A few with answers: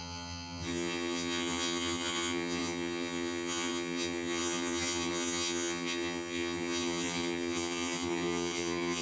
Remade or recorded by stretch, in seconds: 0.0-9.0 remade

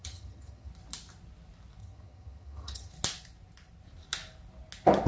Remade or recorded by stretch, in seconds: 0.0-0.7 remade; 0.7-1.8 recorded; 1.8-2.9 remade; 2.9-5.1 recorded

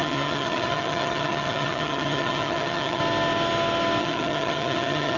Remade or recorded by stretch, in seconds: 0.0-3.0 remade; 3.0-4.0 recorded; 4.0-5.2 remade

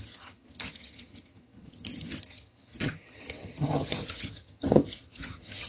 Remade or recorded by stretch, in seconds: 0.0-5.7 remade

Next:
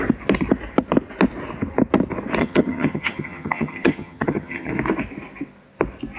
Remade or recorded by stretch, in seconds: 0.0-2.4 recorded; 2.4-4.7 remade; 4.7-6.2 recorded